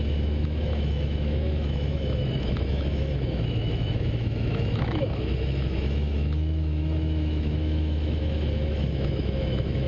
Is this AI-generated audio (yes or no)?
yes